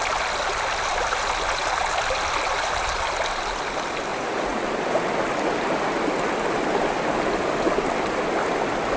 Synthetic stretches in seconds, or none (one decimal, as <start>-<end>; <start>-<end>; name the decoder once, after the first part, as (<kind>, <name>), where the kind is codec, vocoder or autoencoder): 4.1-4.6 (vocoder, Vocos)